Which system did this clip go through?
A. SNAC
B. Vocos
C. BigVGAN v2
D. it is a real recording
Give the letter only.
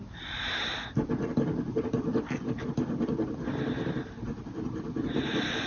D